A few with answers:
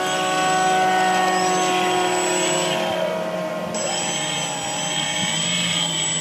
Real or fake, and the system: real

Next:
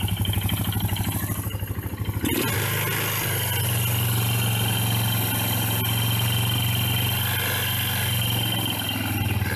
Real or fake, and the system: real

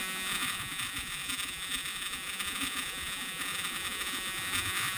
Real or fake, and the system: fake, vocoder, Vocos